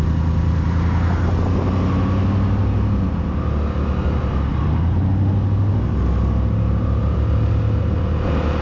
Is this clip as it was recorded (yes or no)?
yes